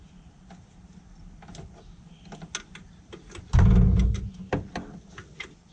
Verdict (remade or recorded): recorded